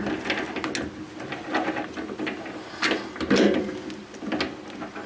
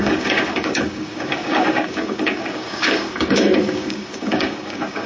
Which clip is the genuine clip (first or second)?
first